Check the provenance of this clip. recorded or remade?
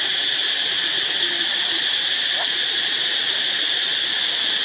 recorded